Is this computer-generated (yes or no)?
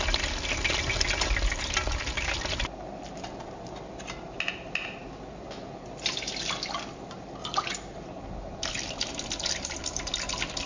no